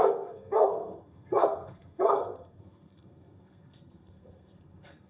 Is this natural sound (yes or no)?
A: no